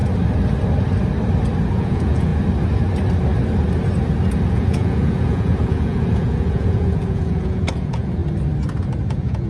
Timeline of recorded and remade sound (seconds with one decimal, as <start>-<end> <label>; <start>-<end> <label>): 0.0-1.7 recorded; 1.7-2.3 remade; 2.3-4.5 recorded; 4.5-8.2 remade; 8.2-9.1 recorded; 9.1-9.5 remade